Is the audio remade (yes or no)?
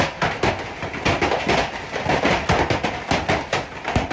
no